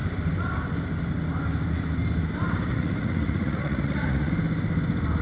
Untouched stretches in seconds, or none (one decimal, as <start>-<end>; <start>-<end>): 0.0-2.7; 4.3-5.2

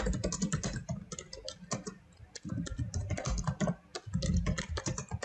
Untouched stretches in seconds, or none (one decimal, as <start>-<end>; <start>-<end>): 0.0-5.2

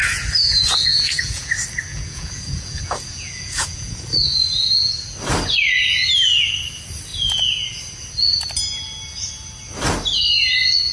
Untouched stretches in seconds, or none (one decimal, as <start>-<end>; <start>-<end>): 1.5-1.9; 4.9-7.1; 7.8-10.9

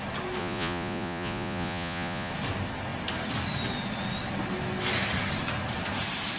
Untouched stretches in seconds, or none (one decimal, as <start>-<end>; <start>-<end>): 0.0-0.4; 2.3-6.4

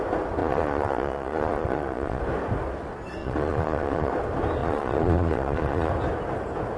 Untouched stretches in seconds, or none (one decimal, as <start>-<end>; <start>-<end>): 0.0-0.4; 2.2-3.2; 4.1-4.6; 5.9-6.8

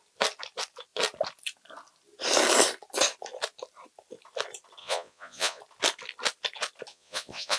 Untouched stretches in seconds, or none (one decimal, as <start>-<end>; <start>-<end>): 0.0-4.8; 5.6-6.9

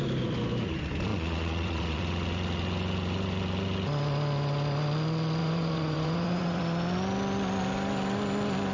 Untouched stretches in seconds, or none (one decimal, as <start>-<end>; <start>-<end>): 0.0-1.1; 2.0-5.4; 6.6-8.7

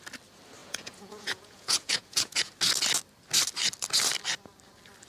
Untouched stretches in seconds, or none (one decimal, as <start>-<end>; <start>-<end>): 0.0-0.6; 2.5-5.1